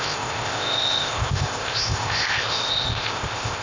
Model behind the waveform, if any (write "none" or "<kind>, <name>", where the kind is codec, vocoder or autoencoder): codec, ZipCodec